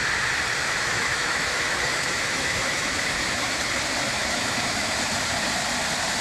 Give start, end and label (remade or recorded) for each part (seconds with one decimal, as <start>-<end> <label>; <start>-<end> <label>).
0.0-0.6 recorded; 0.6-3.7 remade; 3.7-4.2 recorded; 4.2-4.9 remade; 4.9-6.2 recorded